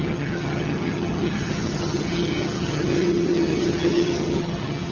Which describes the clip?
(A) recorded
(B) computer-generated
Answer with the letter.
B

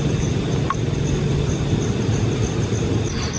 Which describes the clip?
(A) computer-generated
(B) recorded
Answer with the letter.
B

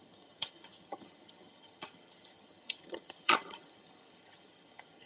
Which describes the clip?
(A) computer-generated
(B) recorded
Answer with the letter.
A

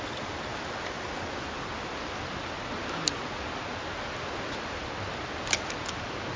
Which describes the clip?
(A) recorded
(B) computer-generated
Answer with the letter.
A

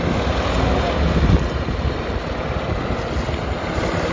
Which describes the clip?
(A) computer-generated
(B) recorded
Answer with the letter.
B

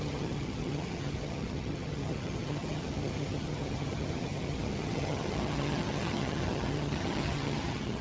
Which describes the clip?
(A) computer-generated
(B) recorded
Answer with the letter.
A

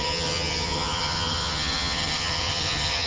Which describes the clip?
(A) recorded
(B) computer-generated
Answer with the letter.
B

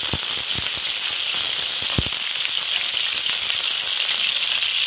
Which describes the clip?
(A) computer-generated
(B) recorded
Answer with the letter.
B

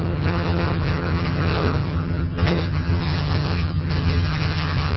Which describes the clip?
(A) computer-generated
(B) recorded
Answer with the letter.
A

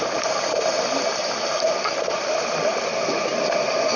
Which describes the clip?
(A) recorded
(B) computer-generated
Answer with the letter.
A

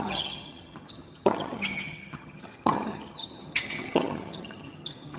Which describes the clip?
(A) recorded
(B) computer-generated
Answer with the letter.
B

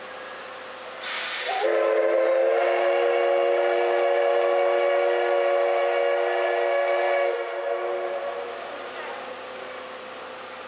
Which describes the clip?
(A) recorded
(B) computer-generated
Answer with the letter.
A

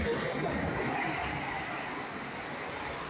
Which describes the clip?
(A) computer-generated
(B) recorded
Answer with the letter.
B